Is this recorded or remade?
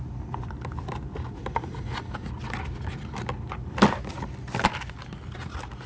recorded